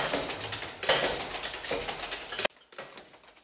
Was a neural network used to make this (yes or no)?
no